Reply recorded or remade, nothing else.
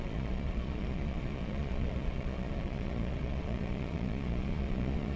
remade